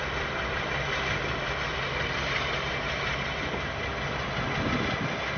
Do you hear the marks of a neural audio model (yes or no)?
no